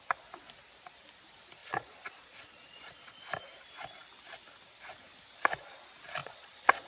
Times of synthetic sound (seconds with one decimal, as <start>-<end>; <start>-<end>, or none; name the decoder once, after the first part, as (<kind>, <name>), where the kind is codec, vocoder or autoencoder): 1.6-3.2 (vocoder, Vocos); 6.2-6.9